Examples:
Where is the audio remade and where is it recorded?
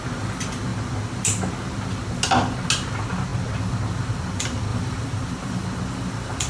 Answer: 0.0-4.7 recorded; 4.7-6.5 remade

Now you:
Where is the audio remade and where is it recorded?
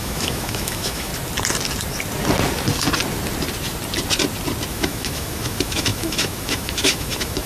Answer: 0.0-1.1 remade; 1.1-4.7 recorded; 4.7-7.5 remade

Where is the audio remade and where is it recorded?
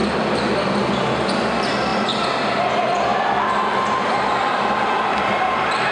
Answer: 0.0-3.1 recorded; 3.1-4.1 remade; 4.1-5.9 recorded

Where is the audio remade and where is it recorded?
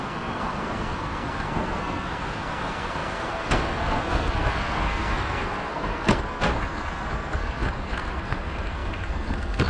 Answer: 0.0-9.7 remade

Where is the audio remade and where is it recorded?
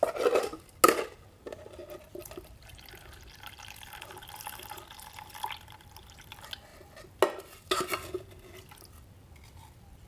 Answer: 0.0-10.1 recorded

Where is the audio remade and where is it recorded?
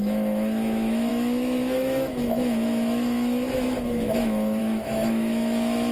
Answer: 0.0-5.9 remade